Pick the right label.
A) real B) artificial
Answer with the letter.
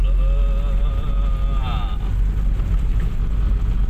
A